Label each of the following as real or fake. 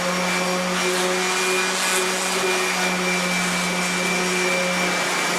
real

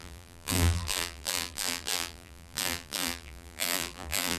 fake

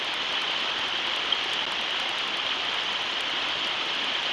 real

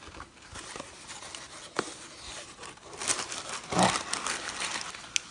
real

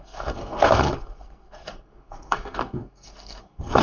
fake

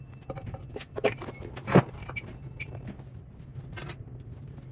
real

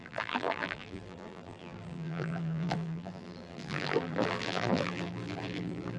fake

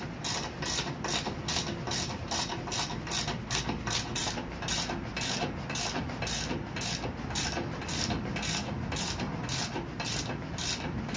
real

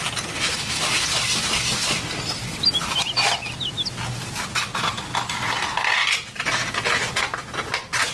real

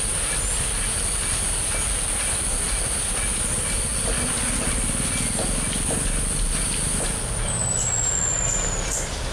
real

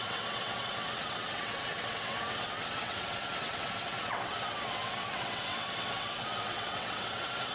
fake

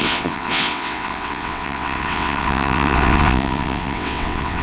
fake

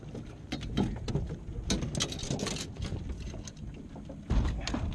real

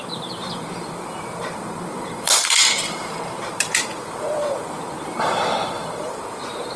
fake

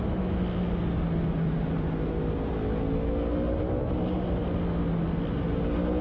real